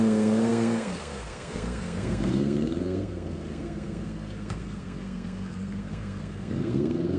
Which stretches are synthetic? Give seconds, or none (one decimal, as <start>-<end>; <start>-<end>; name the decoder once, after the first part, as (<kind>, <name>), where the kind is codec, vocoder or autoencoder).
0.0-7.2 (codec, SNAC)